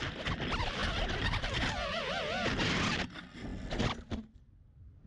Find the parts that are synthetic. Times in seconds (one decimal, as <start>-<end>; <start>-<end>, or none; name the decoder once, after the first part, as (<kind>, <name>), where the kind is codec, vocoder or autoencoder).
none